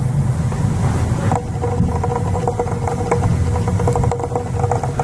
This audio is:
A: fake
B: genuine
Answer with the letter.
B